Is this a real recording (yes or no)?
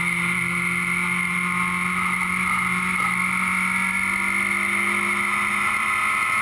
yes